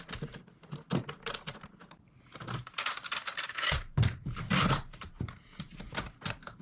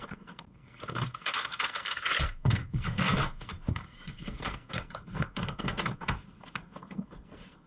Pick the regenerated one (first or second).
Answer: second